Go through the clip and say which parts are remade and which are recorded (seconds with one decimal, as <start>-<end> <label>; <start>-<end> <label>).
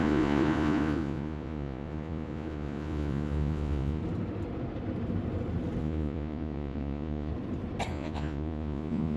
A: 0.0-4.0 remade; 4.0-5.8 recorded; 5.8-7.3 remade; 7.3-7.9 recorded; 7.9-9.2 remade